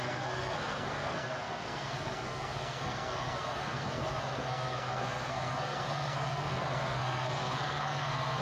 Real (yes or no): no